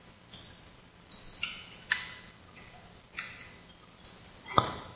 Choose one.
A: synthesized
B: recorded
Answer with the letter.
B